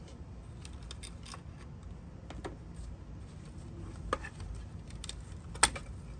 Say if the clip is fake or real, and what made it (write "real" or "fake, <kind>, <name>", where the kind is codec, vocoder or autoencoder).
real